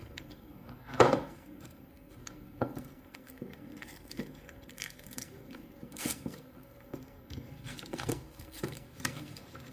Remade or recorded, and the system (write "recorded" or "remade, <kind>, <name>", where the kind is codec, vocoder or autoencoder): remade, codec, SNAC